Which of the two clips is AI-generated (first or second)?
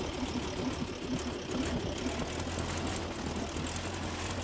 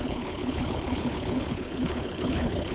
second